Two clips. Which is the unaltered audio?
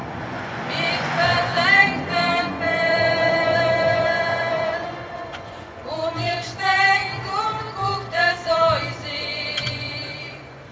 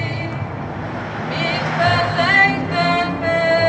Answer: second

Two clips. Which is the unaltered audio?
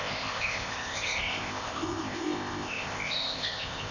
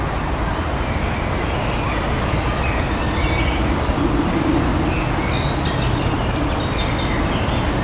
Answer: second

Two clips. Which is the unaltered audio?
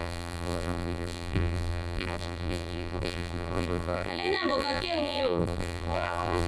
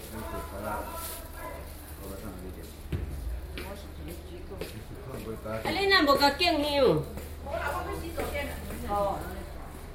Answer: second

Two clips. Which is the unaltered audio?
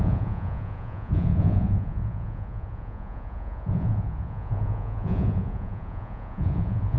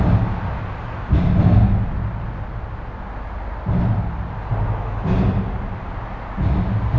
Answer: second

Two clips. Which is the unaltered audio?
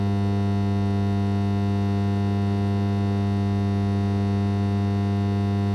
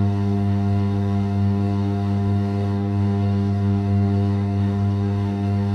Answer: first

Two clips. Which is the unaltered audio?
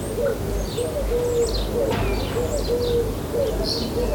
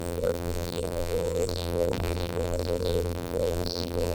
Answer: first